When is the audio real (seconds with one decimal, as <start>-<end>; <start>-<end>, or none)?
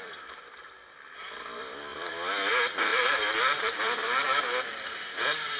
4.0-4.7